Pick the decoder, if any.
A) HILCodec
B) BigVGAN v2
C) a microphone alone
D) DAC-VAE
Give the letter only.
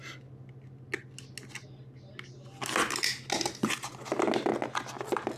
C